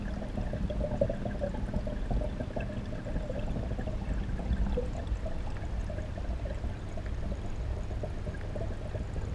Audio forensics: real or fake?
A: real